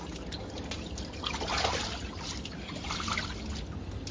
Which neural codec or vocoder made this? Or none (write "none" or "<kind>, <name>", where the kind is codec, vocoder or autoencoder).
none